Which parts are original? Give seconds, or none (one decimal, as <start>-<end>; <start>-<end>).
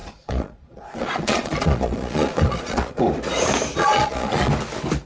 3.0-3.8; 4.5-5.1